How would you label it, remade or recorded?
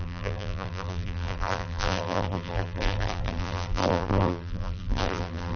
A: remade